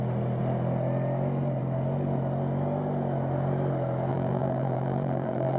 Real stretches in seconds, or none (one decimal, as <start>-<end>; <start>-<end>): 0.0-4.1